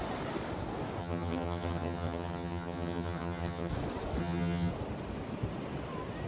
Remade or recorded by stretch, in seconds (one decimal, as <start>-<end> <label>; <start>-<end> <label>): 0.0-1.0 recorded; 1.0-3.7 remade; 3.7-4.2 recorded; 4.2-4.7 remade; 4.7-6.3 recorded